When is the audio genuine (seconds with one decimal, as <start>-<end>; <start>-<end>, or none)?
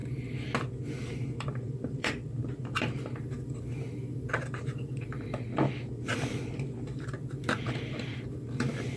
0.0-0.9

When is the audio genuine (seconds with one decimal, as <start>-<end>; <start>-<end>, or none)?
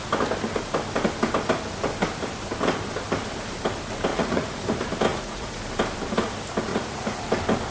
0.0-4.1; 4.6-5.1; 5.6-6.7; 7.3-7.7